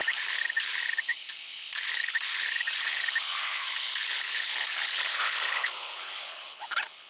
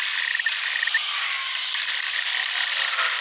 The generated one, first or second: first